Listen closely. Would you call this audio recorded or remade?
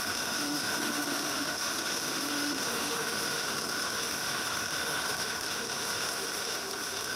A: remade